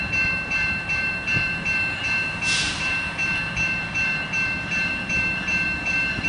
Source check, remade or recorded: remade